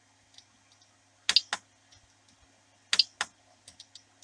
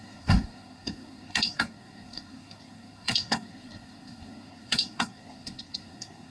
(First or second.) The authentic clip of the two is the first